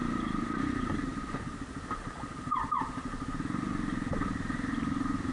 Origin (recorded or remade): remade